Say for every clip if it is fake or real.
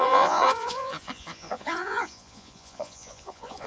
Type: fake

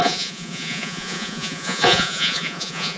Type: fake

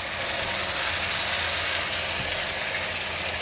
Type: real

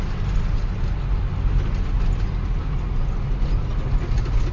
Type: real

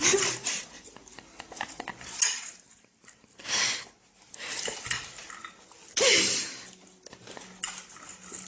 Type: real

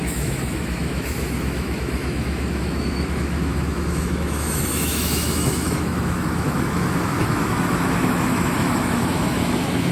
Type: fake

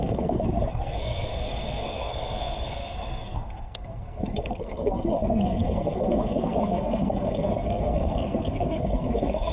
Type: fake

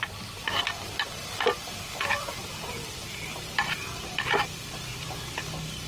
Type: real